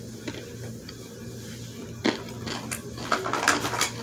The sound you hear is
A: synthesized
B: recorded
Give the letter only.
B